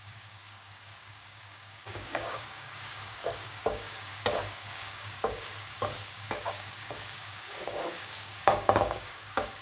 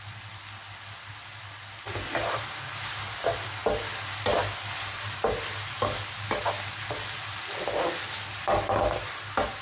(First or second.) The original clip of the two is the second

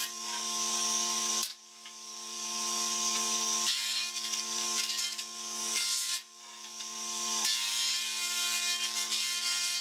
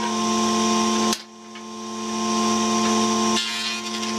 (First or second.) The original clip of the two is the second